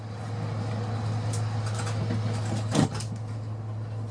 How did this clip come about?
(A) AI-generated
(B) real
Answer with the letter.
B